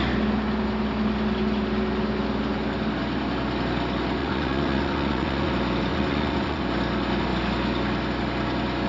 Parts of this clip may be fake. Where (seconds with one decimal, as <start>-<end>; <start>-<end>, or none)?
4.2-5.5; 5.9-6.6